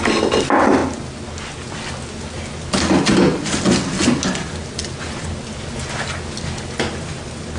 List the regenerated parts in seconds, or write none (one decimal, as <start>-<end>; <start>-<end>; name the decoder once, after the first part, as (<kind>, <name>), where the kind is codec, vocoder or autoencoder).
none